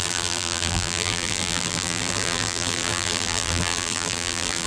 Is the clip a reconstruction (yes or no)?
yes